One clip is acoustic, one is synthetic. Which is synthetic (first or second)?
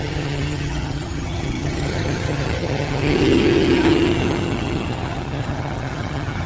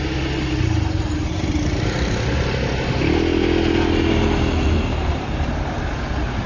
first